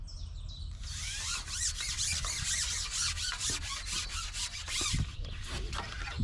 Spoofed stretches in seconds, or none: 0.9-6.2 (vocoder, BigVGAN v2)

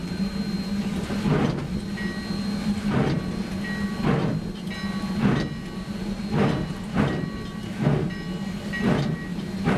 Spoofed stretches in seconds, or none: none

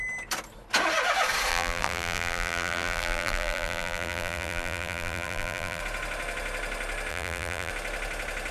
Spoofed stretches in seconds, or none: 1.5-5.8 (vocoder, BigVGAN v2); 7.1-7.7

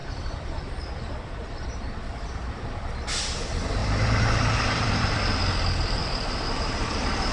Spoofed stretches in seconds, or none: 0.0-1.1 (vocoder, BigVGAN v2); 3.8-5.4; 6.0-7.3

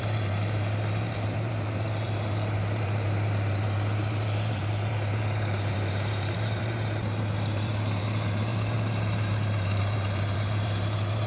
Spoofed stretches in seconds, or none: 0.0-11.3 (vocoder, BigVGAN v2)